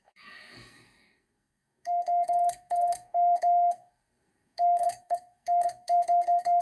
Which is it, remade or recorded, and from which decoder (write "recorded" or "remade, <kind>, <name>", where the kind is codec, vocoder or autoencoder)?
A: remade, codec, SNAC